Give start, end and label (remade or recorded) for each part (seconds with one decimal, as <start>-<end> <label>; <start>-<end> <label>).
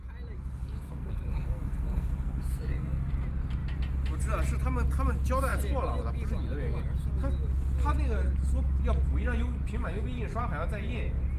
0.0-0.6 recorded; 0.6-3.1 remade; 3.1-11.4 recorded